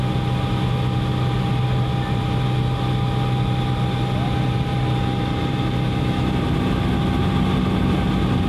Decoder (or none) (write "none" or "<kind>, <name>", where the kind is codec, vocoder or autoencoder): none